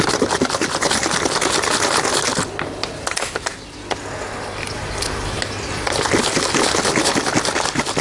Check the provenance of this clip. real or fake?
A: real